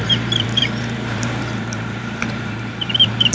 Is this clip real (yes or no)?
no